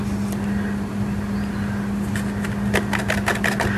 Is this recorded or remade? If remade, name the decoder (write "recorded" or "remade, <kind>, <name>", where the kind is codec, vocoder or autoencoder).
recorded